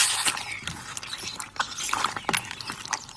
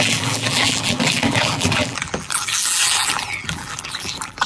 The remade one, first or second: second